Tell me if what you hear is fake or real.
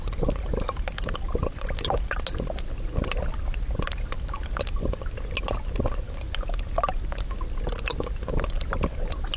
real